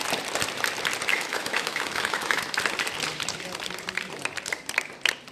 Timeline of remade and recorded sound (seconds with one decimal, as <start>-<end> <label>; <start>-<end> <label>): 0.0-1.1 recorded; 1.1-2.4 remade; 2.4-5.3 recorded